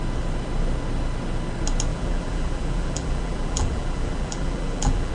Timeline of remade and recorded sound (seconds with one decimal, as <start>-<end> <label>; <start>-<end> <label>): 0.0-1.9 recorded; 1.9-5.1 remade